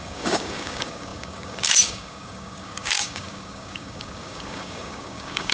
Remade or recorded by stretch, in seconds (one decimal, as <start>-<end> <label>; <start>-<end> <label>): 0.0-5.5 remade